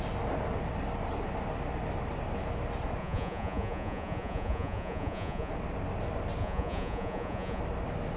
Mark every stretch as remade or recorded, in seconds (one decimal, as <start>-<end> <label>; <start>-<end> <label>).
0.0-3.0 recorded; 3.0-5.5 remade; 5.5-6.4 recorded; 6.4-7.6 remade; 7.6-8.2 recorded